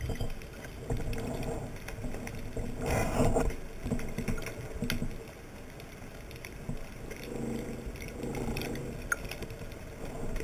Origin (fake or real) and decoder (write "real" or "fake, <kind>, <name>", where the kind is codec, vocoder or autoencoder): real